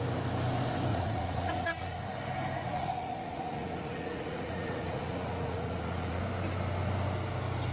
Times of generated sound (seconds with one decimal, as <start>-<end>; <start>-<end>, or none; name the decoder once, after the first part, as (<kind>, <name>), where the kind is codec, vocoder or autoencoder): 0.9-2.0 (vocoder, Vocos); 2.6-6.2